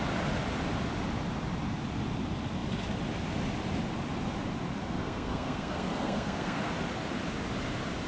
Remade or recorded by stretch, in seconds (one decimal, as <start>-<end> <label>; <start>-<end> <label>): 0.0-4.8 recorded; 4.8-6.7 remade; 6.7-8.1 recorded